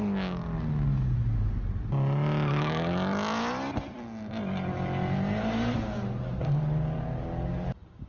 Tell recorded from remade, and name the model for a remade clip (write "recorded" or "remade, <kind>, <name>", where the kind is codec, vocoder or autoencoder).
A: recorded